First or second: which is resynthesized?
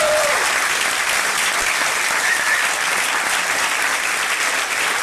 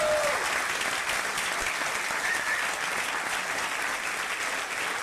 first